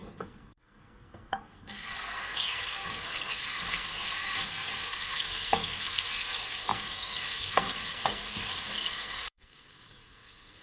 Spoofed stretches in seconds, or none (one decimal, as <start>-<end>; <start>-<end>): 0.0-10.6